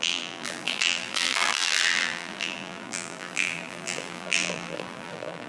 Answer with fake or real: fake